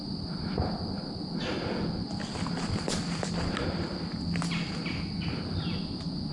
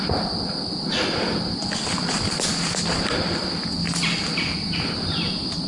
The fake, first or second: second